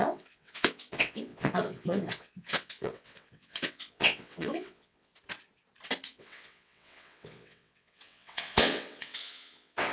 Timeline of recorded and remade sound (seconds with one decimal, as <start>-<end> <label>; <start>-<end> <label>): 0.0-5.1 remade; 5.1-6.1 recorded; 6.1-9.9 remade